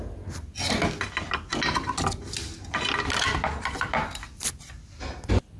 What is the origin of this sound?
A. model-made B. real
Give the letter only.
B